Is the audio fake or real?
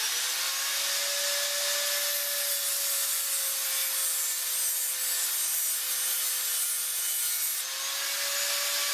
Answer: real